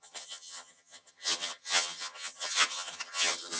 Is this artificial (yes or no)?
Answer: yes